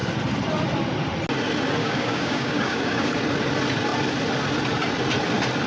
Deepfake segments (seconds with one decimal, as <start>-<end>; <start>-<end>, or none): 1.8-3.1